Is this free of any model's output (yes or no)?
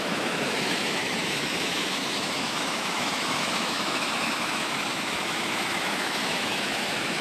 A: no